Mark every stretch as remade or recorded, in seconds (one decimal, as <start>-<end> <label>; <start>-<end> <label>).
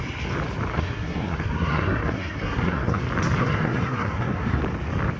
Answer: 0.0-0.7 recorded; 0.7-3.0 remade; 3.0-3.4 recorded; 3.4-4.6 remade; 4.6-5.2 recorded